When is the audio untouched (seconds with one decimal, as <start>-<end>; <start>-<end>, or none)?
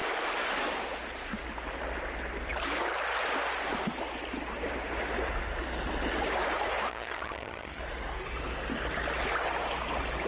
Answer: 0.0-6.9; 7.8-10.3